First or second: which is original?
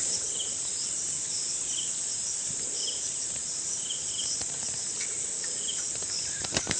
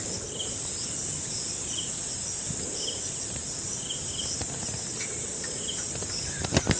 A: second